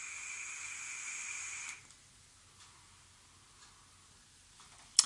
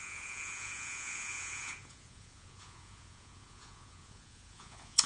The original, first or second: first